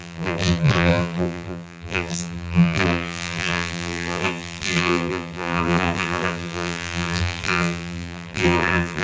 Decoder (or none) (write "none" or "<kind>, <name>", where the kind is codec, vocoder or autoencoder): vocoder, BigVGAN v2